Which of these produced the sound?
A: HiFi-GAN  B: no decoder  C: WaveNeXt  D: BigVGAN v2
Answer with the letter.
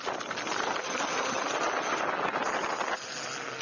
B